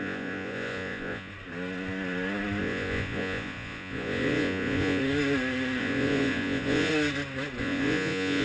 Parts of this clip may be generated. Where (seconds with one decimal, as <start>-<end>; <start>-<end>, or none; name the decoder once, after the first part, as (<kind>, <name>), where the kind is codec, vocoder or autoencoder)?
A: 0.0-1.3 (vocoder, Vocos); 2.6-5.0; 5.8-6.9; 7.6-8.4